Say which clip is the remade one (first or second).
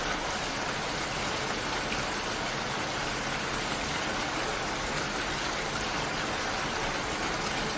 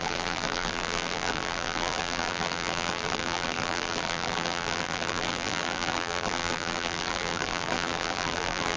second